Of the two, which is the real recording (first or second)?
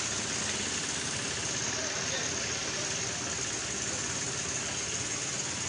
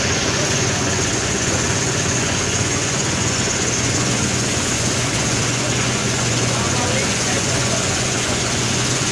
first